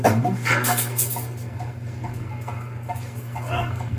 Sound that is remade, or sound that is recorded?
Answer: remade